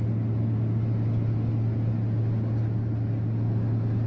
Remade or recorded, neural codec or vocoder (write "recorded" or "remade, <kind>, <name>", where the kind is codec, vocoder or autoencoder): recorded